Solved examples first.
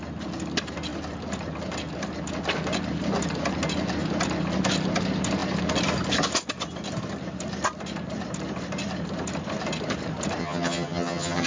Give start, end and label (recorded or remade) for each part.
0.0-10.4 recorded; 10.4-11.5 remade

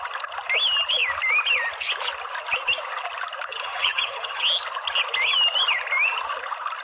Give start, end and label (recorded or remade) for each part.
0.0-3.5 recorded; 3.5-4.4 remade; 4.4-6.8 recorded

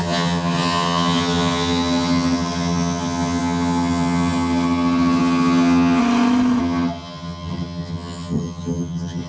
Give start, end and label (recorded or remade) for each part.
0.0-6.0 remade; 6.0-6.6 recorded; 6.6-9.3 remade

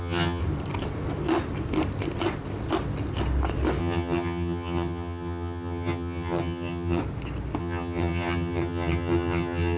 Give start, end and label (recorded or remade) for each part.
0.0-0.4 remade; 0.4-3.8 recorded; 3.8-7.0 remade; 7.0-7.6 recorded; 7.6-9.8 remade

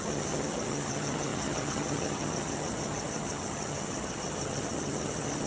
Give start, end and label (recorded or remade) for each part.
0.0-5.5 remade